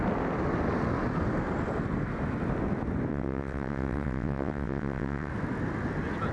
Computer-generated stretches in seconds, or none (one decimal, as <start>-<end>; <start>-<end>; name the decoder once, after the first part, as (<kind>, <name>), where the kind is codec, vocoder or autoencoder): 3.1-5.3 (vocoder, WaveNeXt)